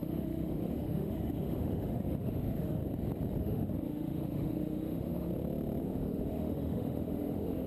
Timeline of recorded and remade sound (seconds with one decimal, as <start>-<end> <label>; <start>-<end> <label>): 0.0-2.8 remade; 2.8-3.4 recorded; 3.4-5.3 remade; 5.3-5.8 recorded; 5.8-7.7 remade